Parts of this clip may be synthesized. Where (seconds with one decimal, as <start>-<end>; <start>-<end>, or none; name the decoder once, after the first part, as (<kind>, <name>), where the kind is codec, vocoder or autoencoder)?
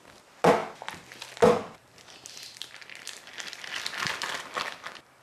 none